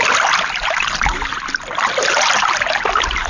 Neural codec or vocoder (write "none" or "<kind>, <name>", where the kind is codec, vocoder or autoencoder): none